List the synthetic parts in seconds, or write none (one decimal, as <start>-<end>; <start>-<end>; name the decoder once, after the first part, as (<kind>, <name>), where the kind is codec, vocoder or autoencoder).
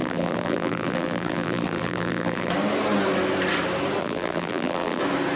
0.0-2.5 (vocoder, BigVGAN v2); 4.0-5.0